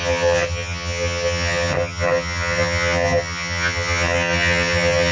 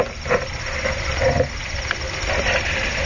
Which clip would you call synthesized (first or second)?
first